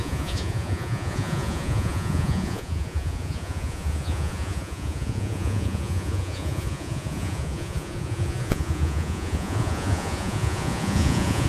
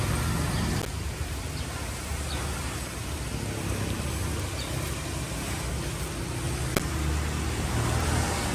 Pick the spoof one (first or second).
first